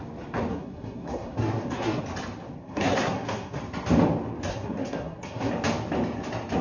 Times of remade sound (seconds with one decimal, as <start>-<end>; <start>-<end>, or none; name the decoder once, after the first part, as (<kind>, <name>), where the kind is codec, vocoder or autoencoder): 0.5-2.0 (codec, SNAC); 2.6-3.6; 4.5-5.5